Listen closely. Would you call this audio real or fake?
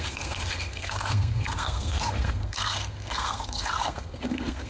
fake